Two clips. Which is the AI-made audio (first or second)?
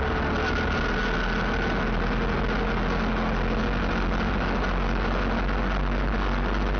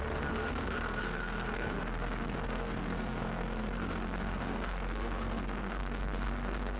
second